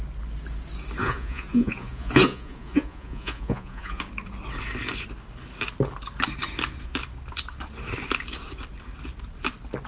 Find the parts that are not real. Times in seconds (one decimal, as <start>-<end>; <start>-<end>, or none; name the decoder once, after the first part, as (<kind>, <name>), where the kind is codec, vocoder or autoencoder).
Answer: 1.0-4.0 (vocoder, Vocos)